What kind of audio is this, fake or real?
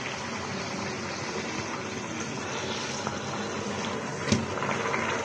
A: real